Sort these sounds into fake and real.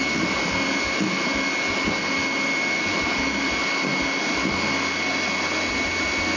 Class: real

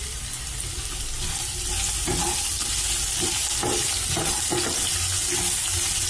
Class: real